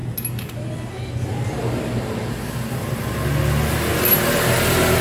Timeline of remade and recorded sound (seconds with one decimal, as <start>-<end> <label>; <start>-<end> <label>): 0.0-5.0 recorded